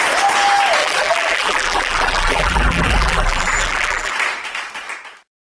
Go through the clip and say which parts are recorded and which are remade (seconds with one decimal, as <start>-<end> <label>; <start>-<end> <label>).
0.0-0.8 recorded; 0.8-4.1 remade; 4.1-5.5 recorded

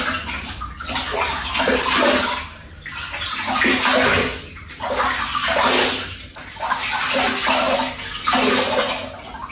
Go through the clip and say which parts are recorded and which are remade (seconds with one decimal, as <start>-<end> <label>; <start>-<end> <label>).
0.0-9.5 recorded

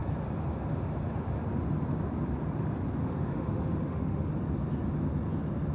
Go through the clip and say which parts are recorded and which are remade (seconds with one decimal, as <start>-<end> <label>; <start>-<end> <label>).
0.0-3.0 recorded; 3.0-4.3 remade; 4.3-5.7 recorded

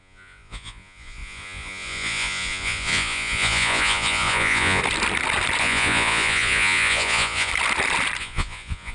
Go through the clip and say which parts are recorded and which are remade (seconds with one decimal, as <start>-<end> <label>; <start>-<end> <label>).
0.0-4.8 remade; 4.8-5.6 recorded; 5.6-7.5 remade; 7.5-8.2 recorded; 8.2-8.9 remade